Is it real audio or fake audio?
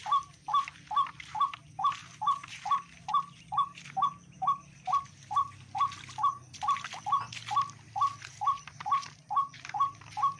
real